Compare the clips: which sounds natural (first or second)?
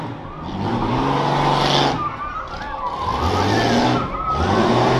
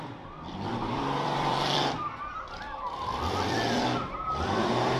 first